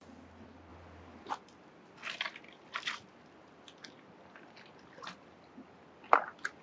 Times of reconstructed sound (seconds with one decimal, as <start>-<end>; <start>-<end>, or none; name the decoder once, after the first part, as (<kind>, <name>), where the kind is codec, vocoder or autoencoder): none